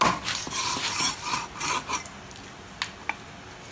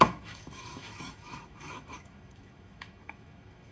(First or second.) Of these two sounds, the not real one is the second